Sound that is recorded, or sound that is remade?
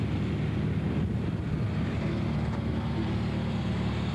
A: recorded